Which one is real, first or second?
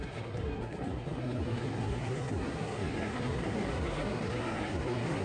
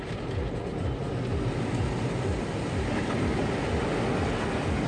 second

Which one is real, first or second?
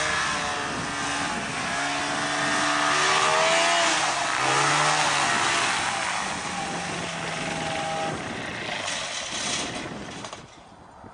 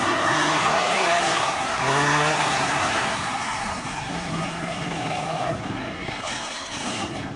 first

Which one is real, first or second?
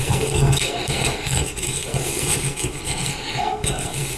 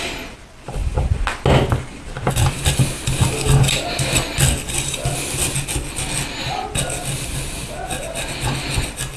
second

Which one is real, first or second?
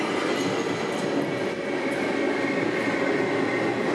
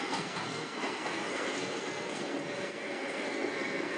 first